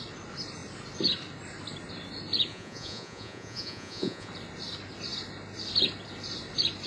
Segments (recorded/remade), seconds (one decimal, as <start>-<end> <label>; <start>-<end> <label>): 0.0-2.5 recorded; 2.5-4.3 remade; 4.3-6.9 recorded